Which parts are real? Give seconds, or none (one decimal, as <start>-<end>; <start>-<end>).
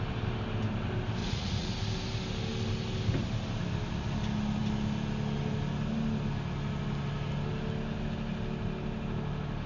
0.0-1.2; 1.7-9.7